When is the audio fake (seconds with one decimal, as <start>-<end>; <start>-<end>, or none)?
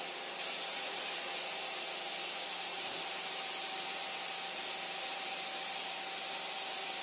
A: 2.7-3.9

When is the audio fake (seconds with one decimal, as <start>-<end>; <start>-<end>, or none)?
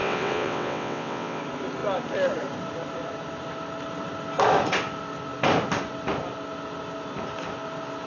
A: 0.0-1.4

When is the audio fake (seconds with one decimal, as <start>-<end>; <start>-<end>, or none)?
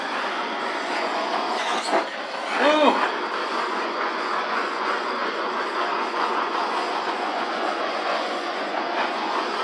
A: 0.0-1.7; 3.5-9.6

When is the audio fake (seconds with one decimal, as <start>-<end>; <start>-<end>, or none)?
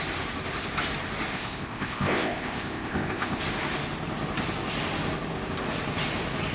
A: 1.3-3.4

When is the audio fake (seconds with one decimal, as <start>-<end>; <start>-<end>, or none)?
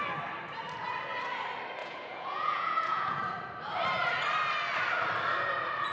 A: 1.8-3.2